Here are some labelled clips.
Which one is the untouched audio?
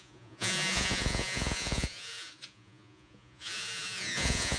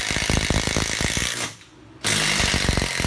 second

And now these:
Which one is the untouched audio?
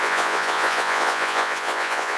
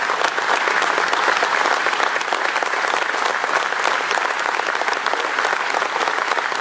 second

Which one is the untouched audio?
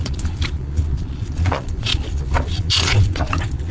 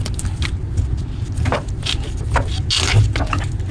second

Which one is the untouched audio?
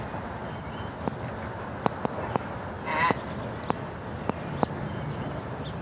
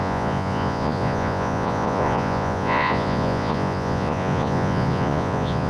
first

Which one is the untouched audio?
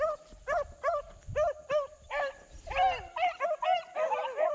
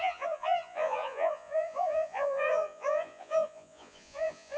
first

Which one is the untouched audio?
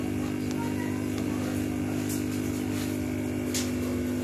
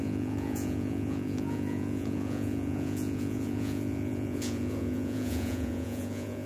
first